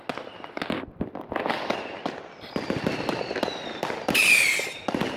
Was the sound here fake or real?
real